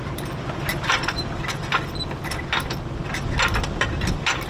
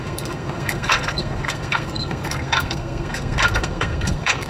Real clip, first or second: first